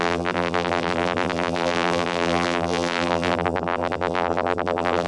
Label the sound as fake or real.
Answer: fake